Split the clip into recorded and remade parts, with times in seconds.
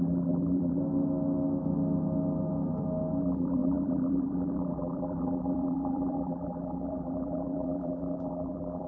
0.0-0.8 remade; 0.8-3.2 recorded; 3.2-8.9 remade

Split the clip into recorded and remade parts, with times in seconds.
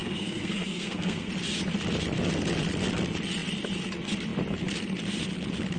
0.0-1.3 remade; 1.3-5.8 recorded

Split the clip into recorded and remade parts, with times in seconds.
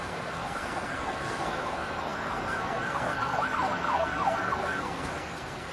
0.0-5.7 remade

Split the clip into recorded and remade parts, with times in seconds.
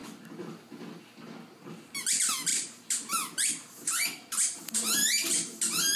0.0-2.5 recorded; 2.5-5.6 remade; 5.6-6.0 recorded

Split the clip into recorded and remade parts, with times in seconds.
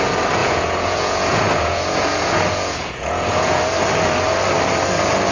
0.0-0.4 recorded; 0.4-3.6 remade; 3.6-5.3 recorded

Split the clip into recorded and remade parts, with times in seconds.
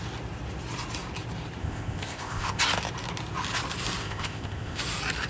0.0-1.6 recorded; 1.6-2.6 remade; 2.6-4.0 recorded; 4.0-4.8 remade; 4.8-5.3 recorded